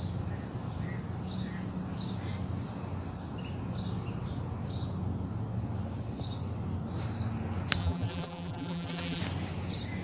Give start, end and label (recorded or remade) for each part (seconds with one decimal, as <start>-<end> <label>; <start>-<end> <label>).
0.0-7.8 recorded; 7.8-9.2 remade; 9.2-10.0 recorded